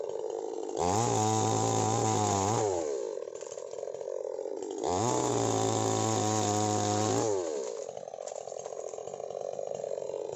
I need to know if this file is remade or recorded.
recorded